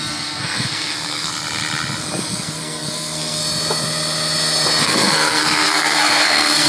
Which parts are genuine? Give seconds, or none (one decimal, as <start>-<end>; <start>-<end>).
1.3-2.0; 3.4-4.8